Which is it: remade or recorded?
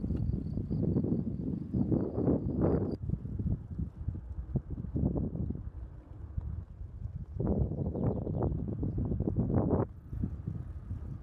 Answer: recorded